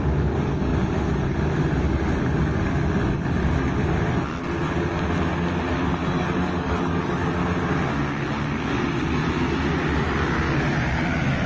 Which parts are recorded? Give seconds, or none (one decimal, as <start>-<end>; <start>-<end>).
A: 0.0-6.0; 7.3-11.5